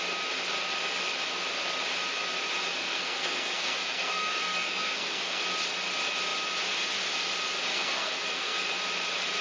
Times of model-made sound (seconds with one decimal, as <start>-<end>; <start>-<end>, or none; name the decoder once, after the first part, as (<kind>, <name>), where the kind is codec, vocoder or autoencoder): 2.8-5.4 (codec, SNAC); 7.7-8.6